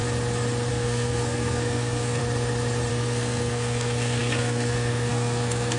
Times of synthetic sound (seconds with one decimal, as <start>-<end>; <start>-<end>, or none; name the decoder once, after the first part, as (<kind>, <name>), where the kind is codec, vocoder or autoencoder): 0.7-2.2 (codec, SNAC); 2.9-5.8